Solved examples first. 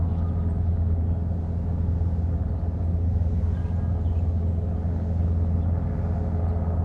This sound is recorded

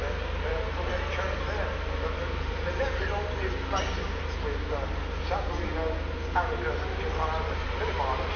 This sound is recorded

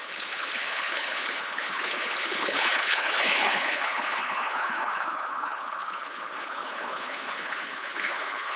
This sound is remade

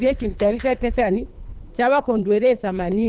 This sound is remade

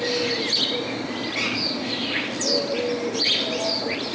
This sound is recorded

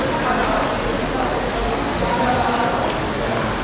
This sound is recorded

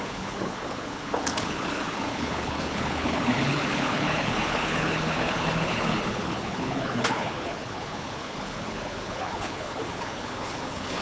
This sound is remade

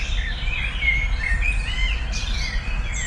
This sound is recorded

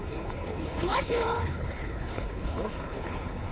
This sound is remade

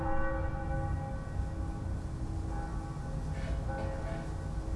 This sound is recorded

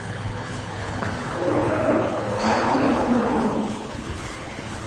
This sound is remade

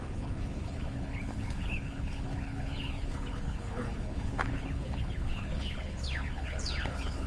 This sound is remade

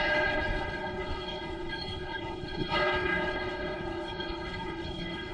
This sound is remade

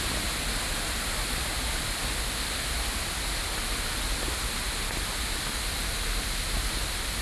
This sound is recorded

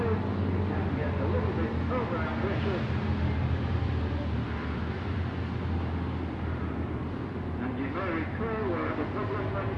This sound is recorded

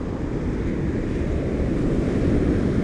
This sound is recorded